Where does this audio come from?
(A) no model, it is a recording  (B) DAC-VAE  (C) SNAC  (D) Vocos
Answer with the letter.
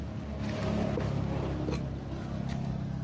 A